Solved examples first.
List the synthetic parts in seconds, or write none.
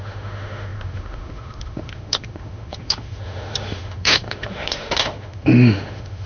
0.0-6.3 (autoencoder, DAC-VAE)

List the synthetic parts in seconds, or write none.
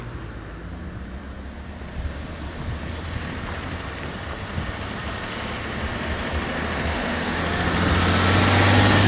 6.9-7.4 (autoencoder, DAC-VAE)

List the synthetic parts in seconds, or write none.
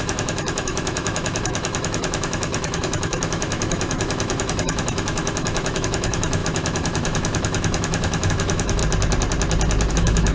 0.0-8.8 (autoencoder, DAC-VAE); 9.9-10.3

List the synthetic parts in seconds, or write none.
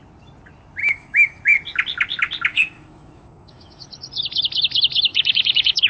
0.8-1.4 (autoencoder, DAC-VAE); 2.5-3.9; 5.1-5.9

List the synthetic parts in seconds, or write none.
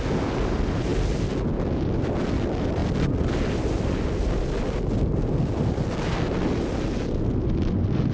none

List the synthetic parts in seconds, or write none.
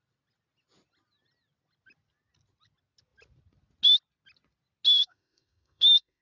5.0-6.2 (autoencoder, DAC-VAE)